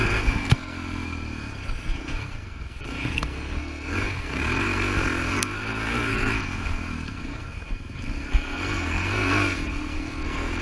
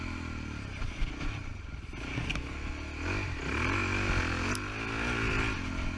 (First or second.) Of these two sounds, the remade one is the first